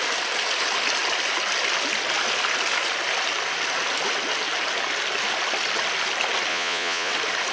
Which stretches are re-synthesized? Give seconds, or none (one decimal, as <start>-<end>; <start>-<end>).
6.5-7.1

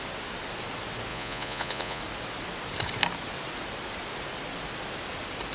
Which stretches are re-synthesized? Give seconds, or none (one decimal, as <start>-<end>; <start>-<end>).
1.1-2.0

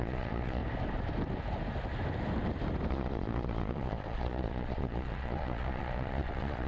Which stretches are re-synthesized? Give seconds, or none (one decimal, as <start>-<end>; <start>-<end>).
0.0-0.6; 2.9-6.7

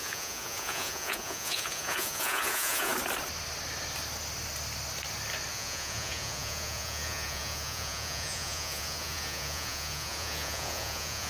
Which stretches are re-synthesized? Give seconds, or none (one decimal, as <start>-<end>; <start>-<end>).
0.0-2.9; 5.5-11.3